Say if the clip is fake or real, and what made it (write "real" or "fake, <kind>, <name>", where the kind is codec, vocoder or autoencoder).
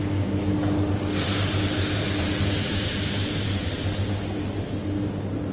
real